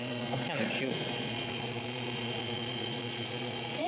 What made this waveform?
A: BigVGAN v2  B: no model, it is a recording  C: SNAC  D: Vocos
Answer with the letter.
D